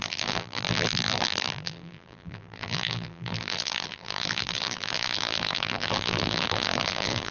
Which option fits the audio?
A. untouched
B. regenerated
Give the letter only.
B